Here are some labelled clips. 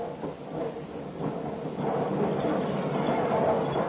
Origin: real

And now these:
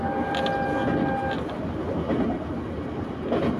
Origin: real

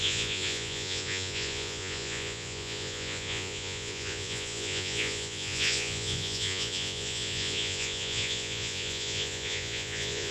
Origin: fake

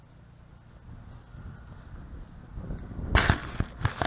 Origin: real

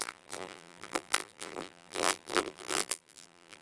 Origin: fake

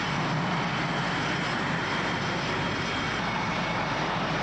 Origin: real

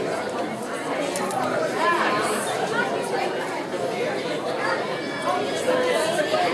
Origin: real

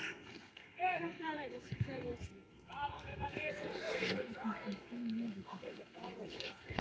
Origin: fake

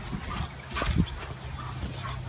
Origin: real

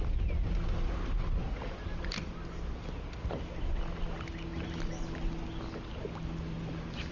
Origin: real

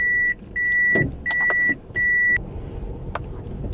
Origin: real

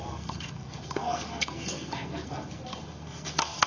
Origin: fake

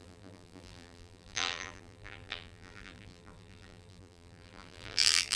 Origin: fake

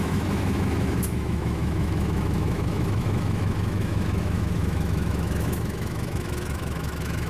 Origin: fake